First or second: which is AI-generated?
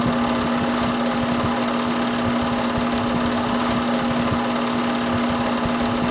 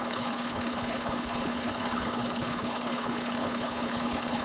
second